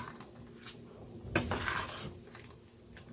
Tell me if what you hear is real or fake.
real